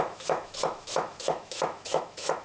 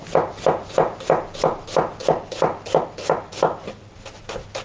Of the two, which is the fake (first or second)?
first